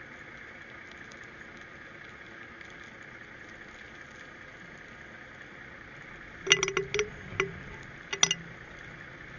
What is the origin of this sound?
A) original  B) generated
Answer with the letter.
A